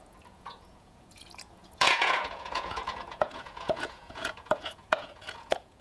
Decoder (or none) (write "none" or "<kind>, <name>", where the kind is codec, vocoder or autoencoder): vocoder, Vocos